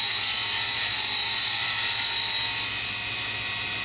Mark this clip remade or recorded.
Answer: recorded